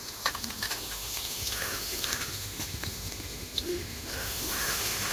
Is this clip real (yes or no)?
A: no